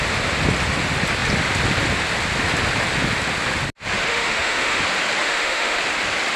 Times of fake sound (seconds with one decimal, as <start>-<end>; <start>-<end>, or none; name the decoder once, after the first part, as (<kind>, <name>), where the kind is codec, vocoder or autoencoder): 4.1-4.8 (autoencoder, DAC-VAE); 5.2-5.8